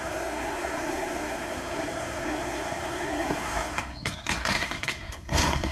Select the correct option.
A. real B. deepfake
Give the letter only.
B